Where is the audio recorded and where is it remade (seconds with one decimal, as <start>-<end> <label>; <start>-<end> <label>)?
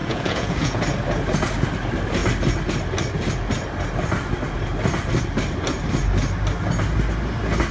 0.0-0.8 remade; 0.8-7.7 recorded